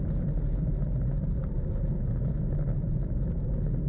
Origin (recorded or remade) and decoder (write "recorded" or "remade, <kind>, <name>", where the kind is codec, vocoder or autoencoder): recorded